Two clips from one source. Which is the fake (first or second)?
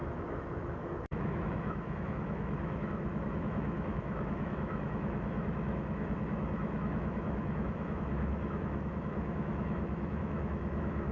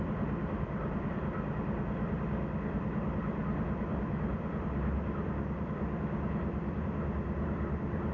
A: first